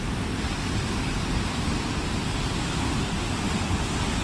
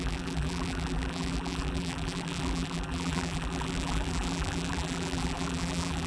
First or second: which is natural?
first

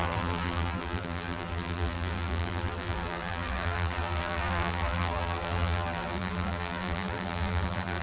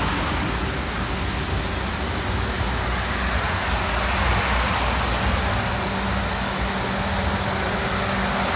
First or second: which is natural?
second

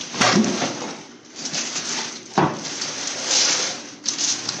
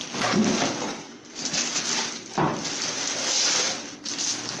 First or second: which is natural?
second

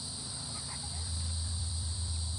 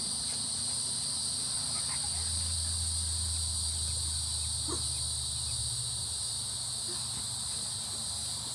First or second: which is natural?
second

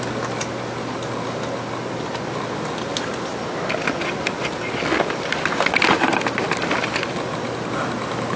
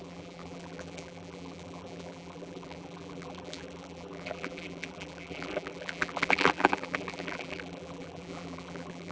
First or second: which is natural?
first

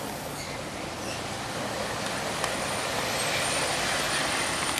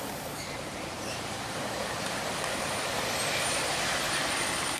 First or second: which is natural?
first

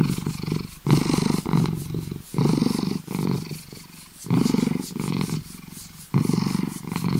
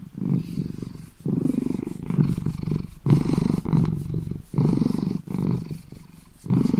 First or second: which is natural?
first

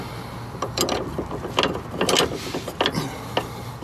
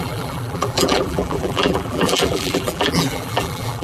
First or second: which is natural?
first